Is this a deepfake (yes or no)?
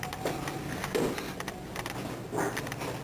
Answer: no